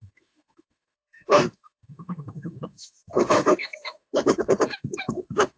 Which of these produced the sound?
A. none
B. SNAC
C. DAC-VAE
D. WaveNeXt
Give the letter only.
C